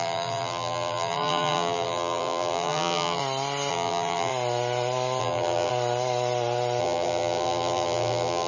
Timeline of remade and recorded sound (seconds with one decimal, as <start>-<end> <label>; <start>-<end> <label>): 0.0-3.2 remade; 3.2-3.7 recorded; 3.7-4.3 remade; 4.3-5.2 recorded; 5.2-5.7 remade; 5.7-6.8 recorded; 6.8-8.5 remade